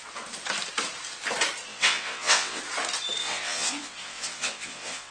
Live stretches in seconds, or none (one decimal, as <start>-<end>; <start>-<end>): 0.0-1.7; 2.6-3.2